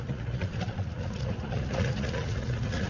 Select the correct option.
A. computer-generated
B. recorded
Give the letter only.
A